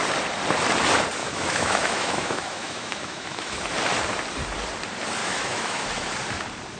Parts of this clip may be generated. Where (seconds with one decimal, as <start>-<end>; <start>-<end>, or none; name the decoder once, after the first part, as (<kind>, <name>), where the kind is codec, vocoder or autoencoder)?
1.2-3.6 (autoencoder, DAC-VAE); 5.2-5.8